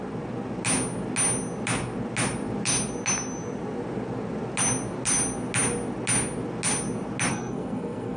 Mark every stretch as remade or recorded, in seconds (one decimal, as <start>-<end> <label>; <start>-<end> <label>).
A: 0.0-7.3 recorded; 7.3-8.2 remade